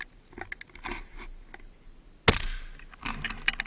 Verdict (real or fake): real